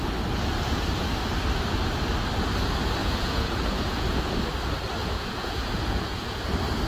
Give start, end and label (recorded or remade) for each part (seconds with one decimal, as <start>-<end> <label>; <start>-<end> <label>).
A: 0.0-3.0 recorded; 3.0-4.3 remade; 4.3-5.0 recorded; 5.0-6.4 remade; 6.4-6.9 recorded